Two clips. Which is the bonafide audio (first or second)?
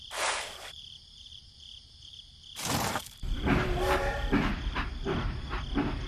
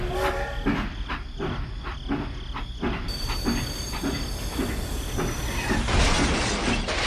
second